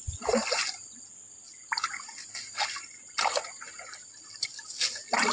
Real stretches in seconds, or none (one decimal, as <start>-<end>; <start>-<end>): 0.0-5.3